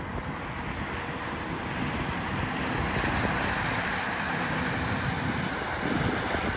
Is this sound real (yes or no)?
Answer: yes